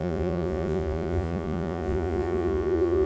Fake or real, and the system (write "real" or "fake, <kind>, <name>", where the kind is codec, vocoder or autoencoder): fake, vocoder, Vocos